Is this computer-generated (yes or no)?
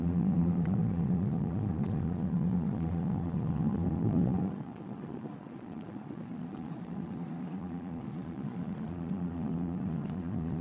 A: yes